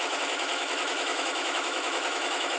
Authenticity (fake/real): fake